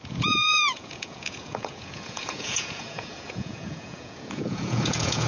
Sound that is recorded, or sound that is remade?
remade